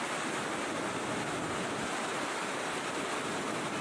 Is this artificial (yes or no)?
no